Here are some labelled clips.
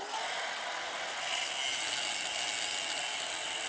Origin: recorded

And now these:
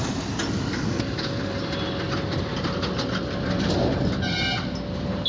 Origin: recorded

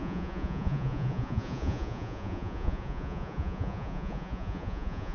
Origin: remade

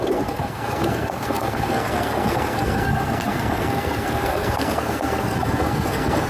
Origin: remade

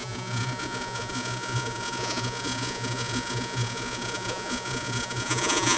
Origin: remade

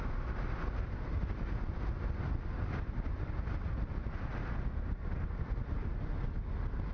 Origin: recorded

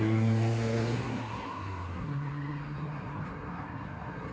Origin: remade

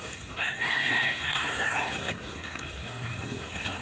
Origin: remade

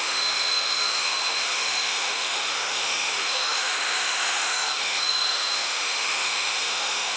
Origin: remade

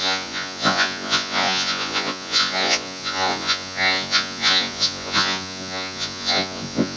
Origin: remade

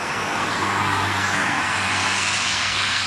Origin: remade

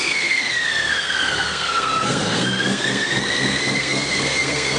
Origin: remade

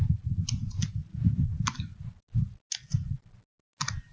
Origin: recorded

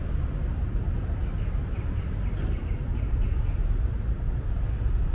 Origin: recorded